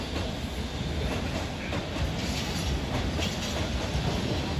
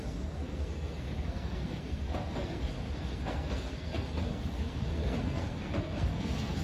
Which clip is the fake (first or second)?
second